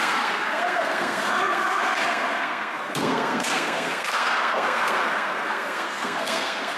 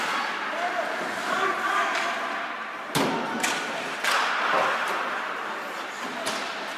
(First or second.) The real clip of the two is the second